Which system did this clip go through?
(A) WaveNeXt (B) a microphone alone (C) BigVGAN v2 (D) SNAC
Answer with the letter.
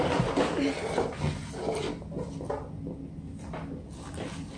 B